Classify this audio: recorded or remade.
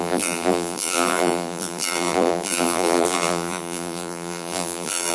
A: remade